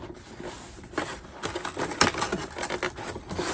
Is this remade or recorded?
recorded